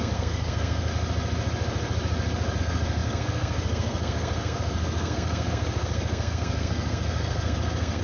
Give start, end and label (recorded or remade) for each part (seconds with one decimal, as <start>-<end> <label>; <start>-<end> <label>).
0.0-0.9 remade; 0.9-2.6 recorded; 2.6-8.0 remade

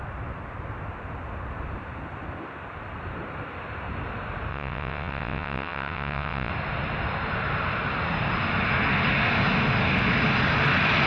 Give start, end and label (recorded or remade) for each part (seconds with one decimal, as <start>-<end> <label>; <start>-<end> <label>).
0.0-4.5 recorded; 4.5-6.5 remade; 6.5-11.1 recorded

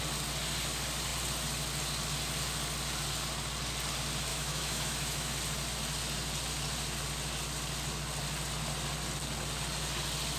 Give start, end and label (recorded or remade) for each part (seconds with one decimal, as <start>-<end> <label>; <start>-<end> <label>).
0.0-4.3 recorded; 4.3-5.3 remade; 5.3-10.4 recorded

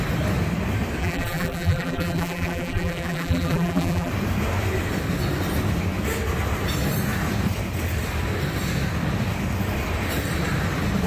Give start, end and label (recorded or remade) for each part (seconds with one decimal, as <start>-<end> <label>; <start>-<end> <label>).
0.0-1.0 recorded; 1.0-4.1 remade; 4.1-11.1 recorded

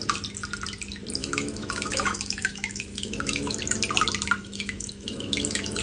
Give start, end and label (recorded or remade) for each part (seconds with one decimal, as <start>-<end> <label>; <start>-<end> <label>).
0.0-1.2 recorded; 1.2-3.6 remade; 3.6-4.4 recorded; 4.4-5.8 remade

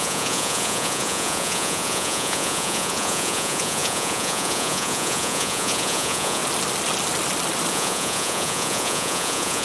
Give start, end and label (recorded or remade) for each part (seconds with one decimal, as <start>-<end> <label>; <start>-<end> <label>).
0.0-6.4 remade; 6.4-7.7 recorded; 7.7-9.6 remade